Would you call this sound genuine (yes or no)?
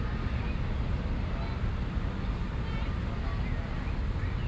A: yes